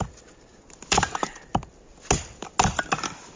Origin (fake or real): real